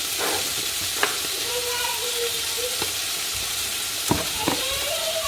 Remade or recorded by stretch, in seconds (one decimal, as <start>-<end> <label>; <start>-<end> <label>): 0.0-0.5 recorded; 0.5-2.2 remade; 2.2-3.0 recorded; 3.0-5.3 remade